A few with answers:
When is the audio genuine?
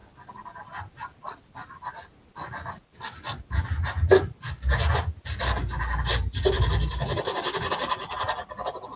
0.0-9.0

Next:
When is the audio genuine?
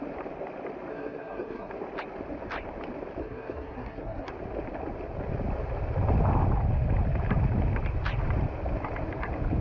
0.0-0.9; 1.7-3.2; 4.3-9.6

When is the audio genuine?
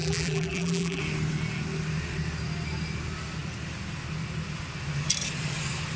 1.0-6.0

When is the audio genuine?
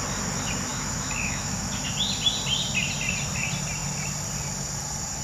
0.0-0.7; 1.7-5.2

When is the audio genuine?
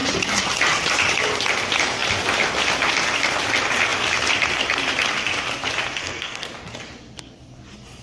0.0-6.0; 6.5-8.0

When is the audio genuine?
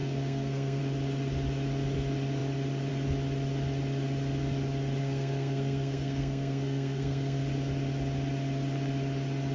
0.8-5.0; 7.4-9.5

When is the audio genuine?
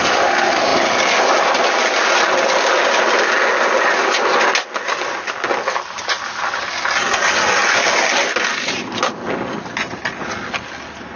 0.0-11.2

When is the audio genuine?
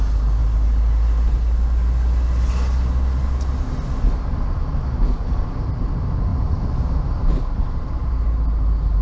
0.0-6.3; 7.9-9.0